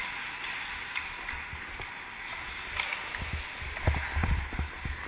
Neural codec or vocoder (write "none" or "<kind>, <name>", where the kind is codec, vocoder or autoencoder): none